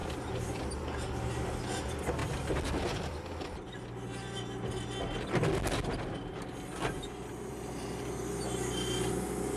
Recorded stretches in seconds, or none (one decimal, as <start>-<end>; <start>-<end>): 0.7-2.2; 3.7-9.6